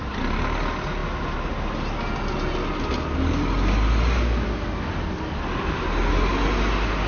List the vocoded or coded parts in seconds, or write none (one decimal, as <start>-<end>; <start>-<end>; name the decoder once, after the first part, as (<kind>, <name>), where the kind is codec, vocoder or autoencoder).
none